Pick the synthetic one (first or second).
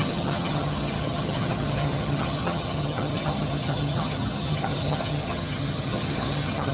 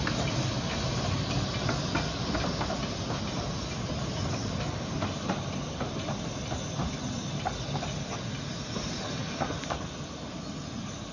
first